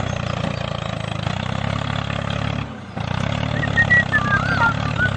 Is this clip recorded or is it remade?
recorded